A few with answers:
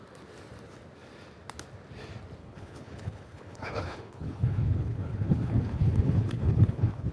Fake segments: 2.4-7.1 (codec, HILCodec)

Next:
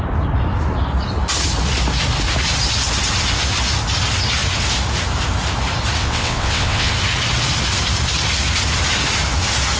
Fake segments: 6.0-6.9 (vocoder, WaveNeXt)

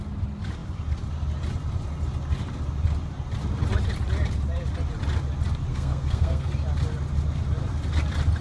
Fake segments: 5.7-6.5 (codec, SNAC)

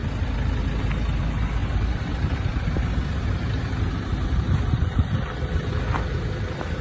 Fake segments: 1.6-5.7 (vocoder, BigVGAN v2)